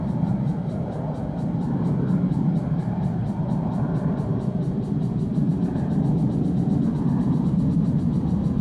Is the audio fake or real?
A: fake